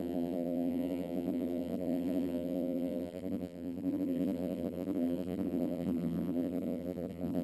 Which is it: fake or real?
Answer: fake